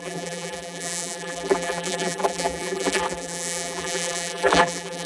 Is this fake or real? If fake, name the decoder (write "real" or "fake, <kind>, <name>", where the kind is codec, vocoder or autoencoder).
fake, vocoder, BigVGAN v2